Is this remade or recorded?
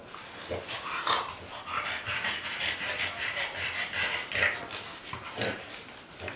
recorded